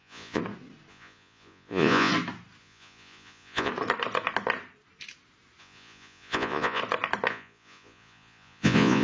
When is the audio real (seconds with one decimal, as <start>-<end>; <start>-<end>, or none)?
0.4-0.9; 2.1-2.6; 3.7-5.6; 6.8-7.3